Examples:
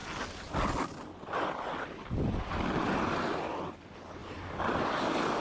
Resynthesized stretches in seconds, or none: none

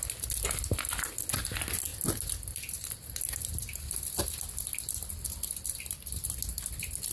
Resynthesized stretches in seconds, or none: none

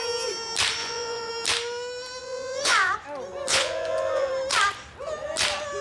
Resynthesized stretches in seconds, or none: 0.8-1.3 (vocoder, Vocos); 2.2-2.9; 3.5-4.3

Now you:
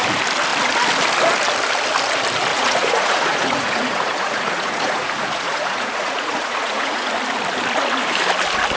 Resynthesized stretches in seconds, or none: 2.5-7.1 (vocoder, Vocos)